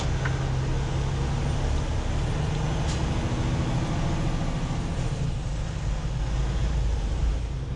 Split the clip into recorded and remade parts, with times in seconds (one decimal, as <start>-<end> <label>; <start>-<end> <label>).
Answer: 0.0-6.6 recorded; 6.6-7.3 remade; 7.3-7.8 recorded